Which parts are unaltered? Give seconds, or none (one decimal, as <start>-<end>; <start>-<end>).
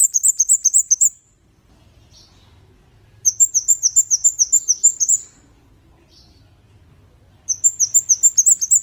2.0-4.9; 6.4-8.8